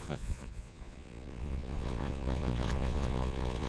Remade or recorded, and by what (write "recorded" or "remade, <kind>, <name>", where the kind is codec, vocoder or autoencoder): remade, vocoder, Vocos